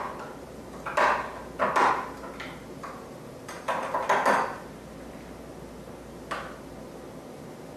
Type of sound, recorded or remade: recorded